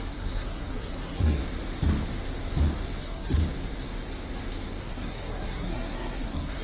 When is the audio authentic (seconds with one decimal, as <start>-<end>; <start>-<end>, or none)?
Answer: 1.4-3.0; 3.4-4.8